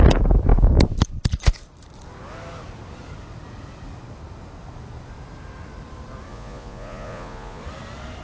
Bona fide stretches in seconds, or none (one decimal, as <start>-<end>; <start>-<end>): 0.0-6.3; 7.6-8.2